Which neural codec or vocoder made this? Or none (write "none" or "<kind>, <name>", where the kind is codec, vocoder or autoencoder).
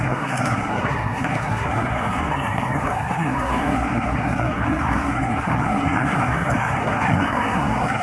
codec, SNAC